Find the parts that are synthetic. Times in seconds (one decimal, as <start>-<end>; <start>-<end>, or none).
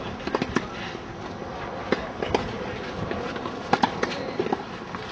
none